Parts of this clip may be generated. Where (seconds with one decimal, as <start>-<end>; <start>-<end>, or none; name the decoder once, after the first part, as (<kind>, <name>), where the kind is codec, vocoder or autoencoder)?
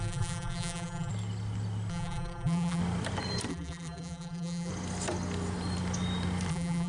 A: 0.0-1.1 (vocoder, BigVGAN v2); 1.9-2.8; 3.5-4.7; 6.5-6.9